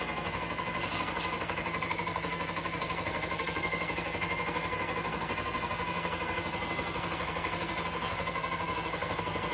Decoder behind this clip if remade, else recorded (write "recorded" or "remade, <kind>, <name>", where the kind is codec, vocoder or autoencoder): remade, codec, SNAC